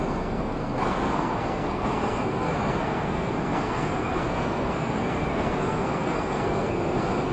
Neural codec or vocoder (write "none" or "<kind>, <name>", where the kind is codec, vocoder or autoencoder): codec, SNAC